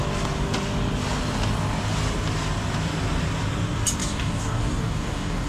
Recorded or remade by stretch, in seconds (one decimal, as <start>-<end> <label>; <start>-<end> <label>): 0.0-4.0 recorded; 4.0-5.5 remade